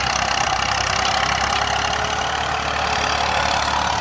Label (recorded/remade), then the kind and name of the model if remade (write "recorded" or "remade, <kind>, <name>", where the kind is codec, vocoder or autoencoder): recorded